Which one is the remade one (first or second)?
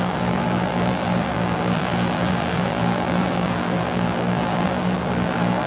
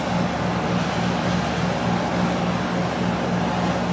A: first